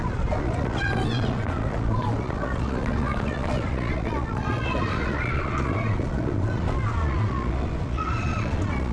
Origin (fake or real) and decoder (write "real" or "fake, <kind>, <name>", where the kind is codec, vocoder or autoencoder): fake, vocoder, Vocos